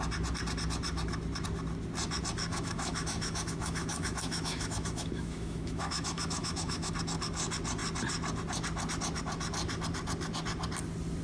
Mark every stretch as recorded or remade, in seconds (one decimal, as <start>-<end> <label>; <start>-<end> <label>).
0.0-2.5 recorded; 2.5-6.9 remade; 6.9-11.2 recorded